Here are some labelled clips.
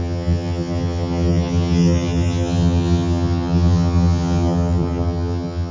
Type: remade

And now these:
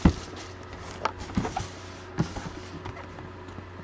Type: recorded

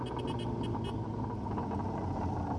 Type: recorded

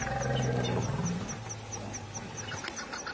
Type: recorded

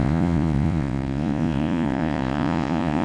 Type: remade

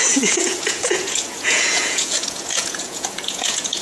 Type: remade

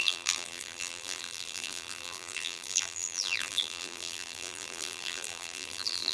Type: remade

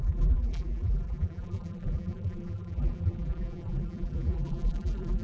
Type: remade